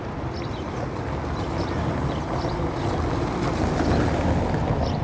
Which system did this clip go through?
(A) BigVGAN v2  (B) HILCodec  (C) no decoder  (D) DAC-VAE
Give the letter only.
C